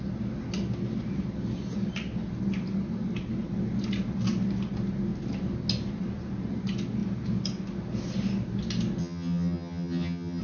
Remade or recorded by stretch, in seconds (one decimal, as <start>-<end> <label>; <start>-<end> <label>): 0.0-9.0 recorded; 9.0-10.4 remade